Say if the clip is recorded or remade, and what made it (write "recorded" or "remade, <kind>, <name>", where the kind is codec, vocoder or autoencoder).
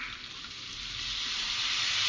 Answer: recorded